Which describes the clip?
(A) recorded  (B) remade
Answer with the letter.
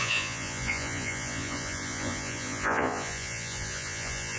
B